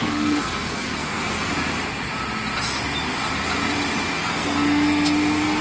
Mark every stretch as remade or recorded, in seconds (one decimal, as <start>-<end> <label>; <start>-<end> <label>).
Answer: 0.0-1.5 remade; 1.5-4.2 recorded; 4.2-5.6 remade